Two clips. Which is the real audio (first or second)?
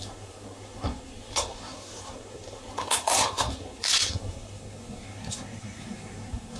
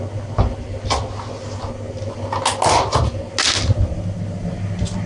second